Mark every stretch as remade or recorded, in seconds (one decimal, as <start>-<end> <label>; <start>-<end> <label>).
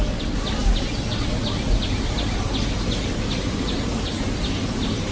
0.0-5.1 recorded